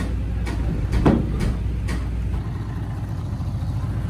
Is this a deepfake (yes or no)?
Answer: no